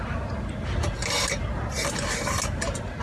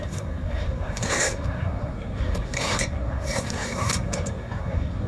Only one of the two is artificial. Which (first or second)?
second